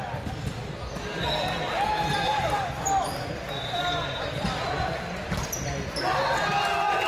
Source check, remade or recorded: recorded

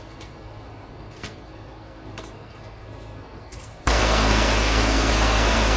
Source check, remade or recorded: remade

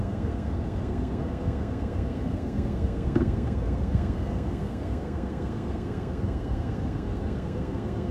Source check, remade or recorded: remade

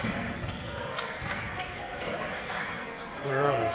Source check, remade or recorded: remade